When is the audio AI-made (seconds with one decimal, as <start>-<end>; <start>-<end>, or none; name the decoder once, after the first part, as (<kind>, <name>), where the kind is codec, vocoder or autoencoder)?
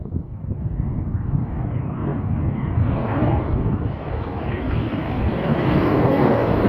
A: 0.0-6.7 (codec, DAC)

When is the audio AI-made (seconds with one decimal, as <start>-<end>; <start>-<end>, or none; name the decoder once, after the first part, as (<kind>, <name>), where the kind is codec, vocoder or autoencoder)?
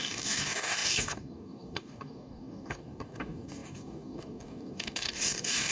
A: 0.0-5.7 (codec, DAC)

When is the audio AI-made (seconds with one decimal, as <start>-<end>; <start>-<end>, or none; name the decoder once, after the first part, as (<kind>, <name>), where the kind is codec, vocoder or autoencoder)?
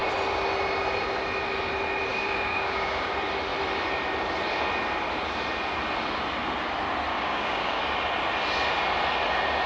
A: 2.1-3.1 (codec, DAC); 7.1-7.8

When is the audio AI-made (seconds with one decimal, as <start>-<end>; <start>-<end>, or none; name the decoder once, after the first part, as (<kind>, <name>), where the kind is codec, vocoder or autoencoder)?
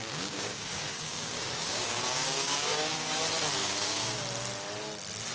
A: 0.0-3.2 (codec, DAC); 3.6-4.2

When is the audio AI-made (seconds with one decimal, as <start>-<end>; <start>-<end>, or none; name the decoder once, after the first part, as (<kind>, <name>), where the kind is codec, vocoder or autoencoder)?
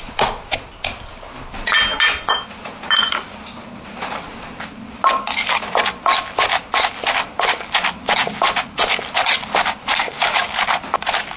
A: 9.9-10.4 (codec, DAC)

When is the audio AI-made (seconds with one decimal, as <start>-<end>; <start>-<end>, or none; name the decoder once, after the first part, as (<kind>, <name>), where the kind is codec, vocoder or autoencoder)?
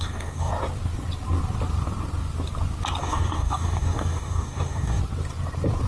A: 0.0-0.5 (codec, DAC); 3.0-5.0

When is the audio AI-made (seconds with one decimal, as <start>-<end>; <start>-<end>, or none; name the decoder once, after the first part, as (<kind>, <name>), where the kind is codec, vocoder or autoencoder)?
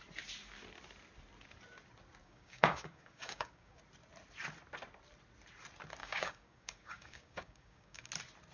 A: 2.2-3.8 (codec, DAC); 6.0-8.1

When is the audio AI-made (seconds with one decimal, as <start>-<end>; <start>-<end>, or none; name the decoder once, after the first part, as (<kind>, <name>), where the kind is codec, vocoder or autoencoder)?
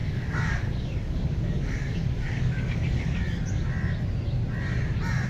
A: 0.0-3.2 (codec, DAC)